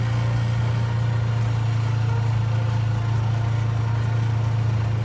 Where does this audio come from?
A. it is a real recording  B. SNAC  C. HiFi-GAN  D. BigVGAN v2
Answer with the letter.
A